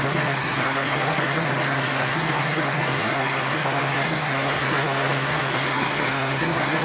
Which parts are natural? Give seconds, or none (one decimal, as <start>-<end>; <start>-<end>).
none

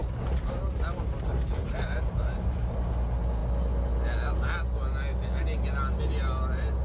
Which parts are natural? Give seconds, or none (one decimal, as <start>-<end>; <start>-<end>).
0.0-1.6; 2.9-6.8